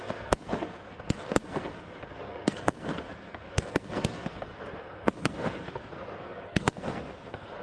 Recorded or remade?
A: remade